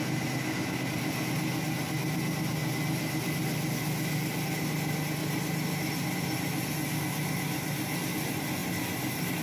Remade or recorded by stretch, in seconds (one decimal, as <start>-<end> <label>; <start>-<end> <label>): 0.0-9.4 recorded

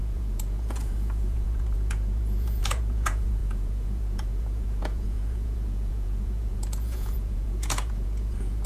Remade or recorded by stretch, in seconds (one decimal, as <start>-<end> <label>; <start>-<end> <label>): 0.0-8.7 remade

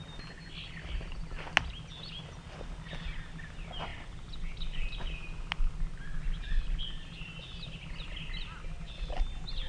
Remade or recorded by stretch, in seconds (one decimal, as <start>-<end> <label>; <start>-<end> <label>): 0.0-9.7 recorded

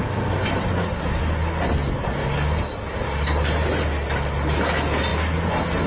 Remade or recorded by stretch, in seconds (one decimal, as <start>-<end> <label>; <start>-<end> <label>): 0.0-5.9 recorded

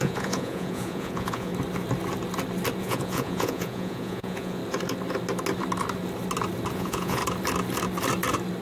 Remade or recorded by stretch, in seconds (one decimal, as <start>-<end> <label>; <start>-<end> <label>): 0.0-1.5 remade; 1.5-2.8 recorded; 2.8-4.6 remade; 4.6-6.7 recorded; 6.7-7.2 remade; 7.2-8.6 recorded

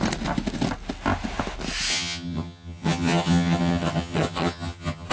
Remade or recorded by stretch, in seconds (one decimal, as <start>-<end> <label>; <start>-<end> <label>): 0.0-1.9 recorded; 1.9-5.1 remade